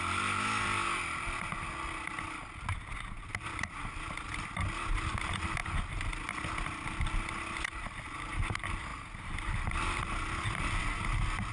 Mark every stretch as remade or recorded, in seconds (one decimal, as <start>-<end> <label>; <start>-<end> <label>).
0.0-11.5 recorded